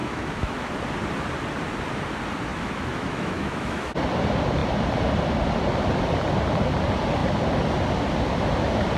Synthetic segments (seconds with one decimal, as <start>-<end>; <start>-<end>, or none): 0.0-0.7; 2.5-3.9